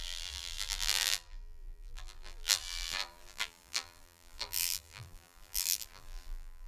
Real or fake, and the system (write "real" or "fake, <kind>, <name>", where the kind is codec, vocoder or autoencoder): fake, vocoder, BigVGAN v2